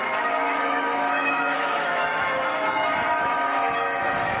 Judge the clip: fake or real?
fake